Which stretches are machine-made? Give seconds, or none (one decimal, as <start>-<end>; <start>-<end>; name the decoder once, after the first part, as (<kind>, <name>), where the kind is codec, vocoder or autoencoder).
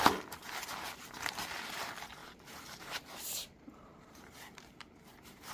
2.2-5.5 (vocoder, BigVGAN v2)